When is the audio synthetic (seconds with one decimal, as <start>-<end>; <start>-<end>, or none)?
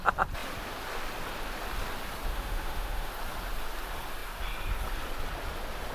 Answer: 2.3-3.1